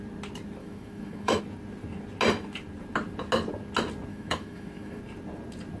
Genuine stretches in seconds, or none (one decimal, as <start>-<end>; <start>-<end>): 0.0-0.6; 1.4-4.1; 5.0-5.8